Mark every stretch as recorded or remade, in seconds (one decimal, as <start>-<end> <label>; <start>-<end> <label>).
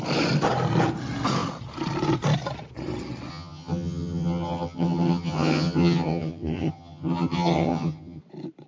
0.0-3.3 recorded; 3.3-8.2 remade; 8.2-8.7 recorded